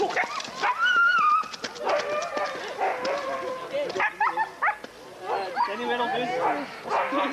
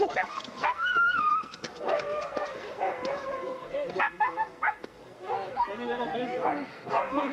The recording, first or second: first